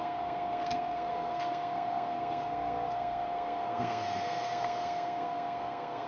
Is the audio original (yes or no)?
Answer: no